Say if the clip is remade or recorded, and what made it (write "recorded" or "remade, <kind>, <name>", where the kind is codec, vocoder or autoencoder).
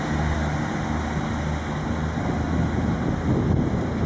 recorded